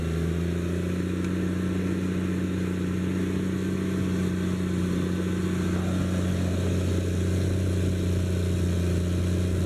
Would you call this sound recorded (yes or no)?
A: yes